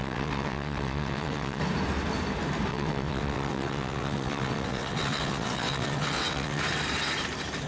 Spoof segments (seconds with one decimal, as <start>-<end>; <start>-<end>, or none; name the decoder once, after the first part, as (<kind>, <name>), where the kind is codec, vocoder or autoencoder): 0.0-1.6 (vocoder, WaveNeXt); 2.7-6.6